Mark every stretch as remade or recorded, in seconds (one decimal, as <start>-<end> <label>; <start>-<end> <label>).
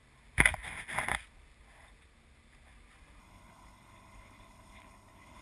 0.0-3.2 recorded; 3.2-5.4 remade